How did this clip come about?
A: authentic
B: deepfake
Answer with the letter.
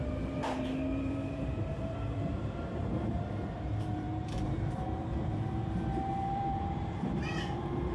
B